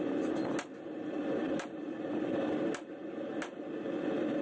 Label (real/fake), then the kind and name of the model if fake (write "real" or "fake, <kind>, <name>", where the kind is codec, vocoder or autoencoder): real